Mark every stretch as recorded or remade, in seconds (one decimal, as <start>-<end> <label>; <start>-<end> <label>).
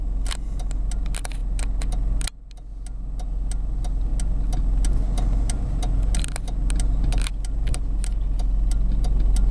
0.0-9.5 recorded